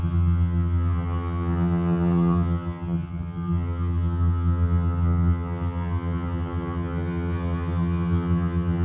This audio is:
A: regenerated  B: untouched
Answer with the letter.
A